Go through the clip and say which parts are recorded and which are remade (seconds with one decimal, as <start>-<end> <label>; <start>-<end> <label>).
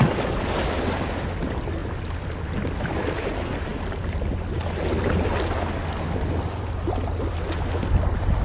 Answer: 0.0-8.4 recorded